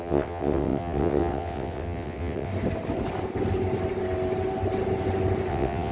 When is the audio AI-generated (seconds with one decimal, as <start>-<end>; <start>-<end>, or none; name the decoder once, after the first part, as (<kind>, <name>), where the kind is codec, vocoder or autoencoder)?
0.0-2.5 (vocoder, WaveNeXt); 5.5-5.9

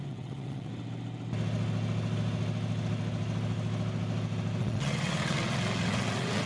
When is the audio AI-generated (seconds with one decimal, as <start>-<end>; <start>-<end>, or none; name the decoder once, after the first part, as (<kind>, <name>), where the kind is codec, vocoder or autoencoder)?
0.0-0.7 (vocoder, WaveNeXt); 4.6-6.5

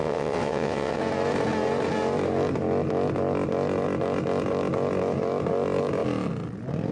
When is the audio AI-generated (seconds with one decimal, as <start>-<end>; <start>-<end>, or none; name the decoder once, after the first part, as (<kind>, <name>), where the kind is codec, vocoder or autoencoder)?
0.0-1.0 (vocoder, WaveNeXt)

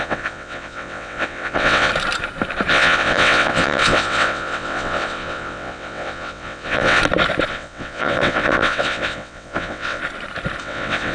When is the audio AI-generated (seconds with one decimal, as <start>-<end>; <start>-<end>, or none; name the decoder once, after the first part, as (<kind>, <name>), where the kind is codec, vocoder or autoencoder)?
0.0-1.9 (vocoder, WaveNeXt); 2.7-7.0; 7.5-10.0; 10.6-11.1

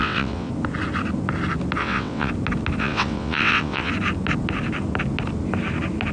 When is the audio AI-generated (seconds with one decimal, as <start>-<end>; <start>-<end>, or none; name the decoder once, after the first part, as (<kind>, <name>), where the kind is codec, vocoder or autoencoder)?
0.0-0.5 (vocoder, WaveNeXt); 1.8-2.3; 2.8-3.9

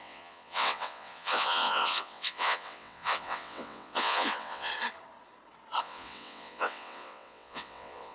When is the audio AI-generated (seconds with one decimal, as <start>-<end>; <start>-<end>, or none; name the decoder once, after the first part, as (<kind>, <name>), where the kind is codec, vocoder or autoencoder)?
0.0-4.7 (vocoder, WaveNeXt); 5.8-8.1

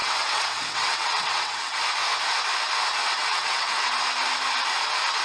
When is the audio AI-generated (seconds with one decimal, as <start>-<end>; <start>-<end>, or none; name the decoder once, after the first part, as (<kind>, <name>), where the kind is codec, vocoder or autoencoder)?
0.0-1.8 (vocoder, WaveNeXt); 3.2-3.9

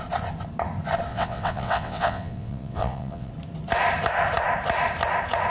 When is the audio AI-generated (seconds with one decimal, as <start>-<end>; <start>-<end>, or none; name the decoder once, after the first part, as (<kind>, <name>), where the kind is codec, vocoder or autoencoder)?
1.1-3.3 (vocoder, WaveNeXt)